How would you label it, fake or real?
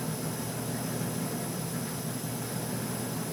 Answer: real